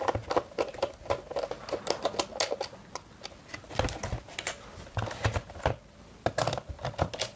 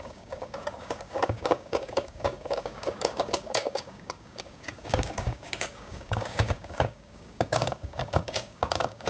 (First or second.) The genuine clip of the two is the first